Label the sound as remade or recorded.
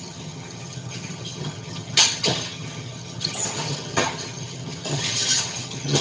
remade